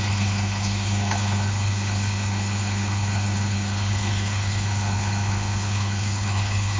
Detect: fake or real fake